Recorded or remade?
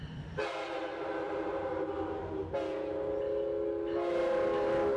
recorded